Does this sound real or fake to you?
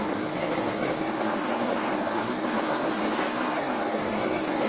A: fake